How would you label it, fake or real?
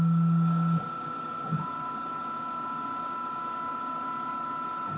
real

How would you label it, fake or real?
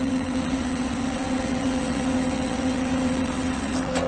fake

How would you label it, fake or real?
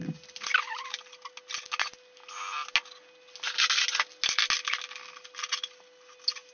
real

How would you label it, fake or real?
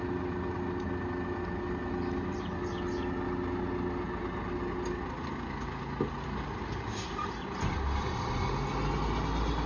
real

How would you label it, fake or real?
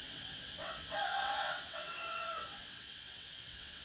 fake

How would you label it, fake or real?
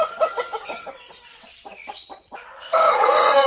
fake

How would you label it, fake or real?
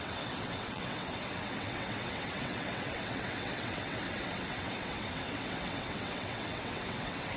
fake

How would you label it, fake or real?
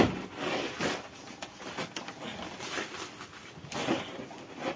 real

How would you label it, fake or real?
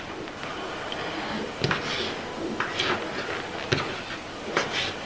real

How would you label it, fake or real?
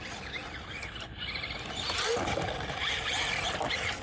real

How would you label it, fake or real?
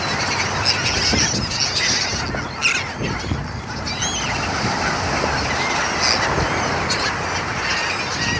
real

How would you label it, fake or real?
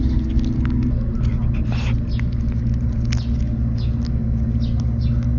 real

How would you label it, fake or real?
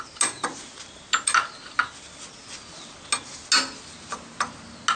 real